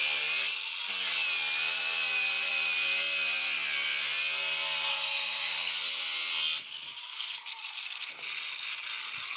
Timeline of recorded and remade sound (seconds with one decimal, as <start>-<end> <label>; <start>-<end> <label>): 0.0-4.9 recorded; 4.9-5.7 remade; 5.7-7.1 recorded; 7.1-8.1 remade; 8.1-9.4 recorded